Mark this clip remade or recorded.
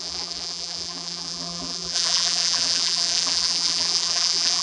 remade